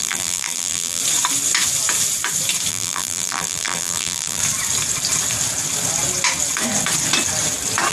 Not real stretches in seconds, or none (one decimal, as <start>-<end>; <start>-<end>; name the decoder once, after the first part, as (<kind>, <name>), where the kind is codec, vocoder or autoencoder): 0.0-1.0 (vocoder, BigVGAN v2); 2.7-4.4